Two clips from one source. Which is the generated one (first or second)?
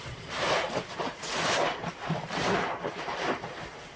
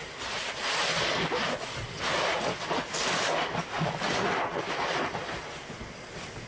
first